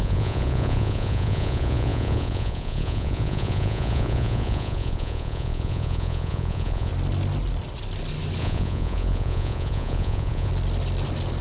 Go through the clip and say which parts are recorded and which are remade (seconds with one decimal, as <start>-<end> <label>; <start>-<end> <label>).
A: 0.0-6.9 remade; 6.9-8.4 recorded; 8.4-10.5 remade; 10.5-11.4 recorded